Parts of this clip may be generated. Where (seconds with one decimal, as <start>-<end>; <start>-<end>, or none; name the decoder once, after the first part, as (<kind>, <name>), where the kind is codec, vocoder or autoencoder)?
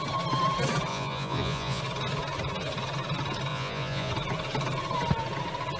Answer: 0.9-1.8 (vocoder, Vocos); 3.5-4.1